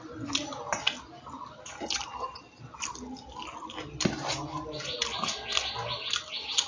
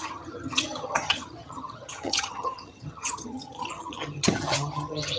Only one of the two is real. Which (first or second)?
first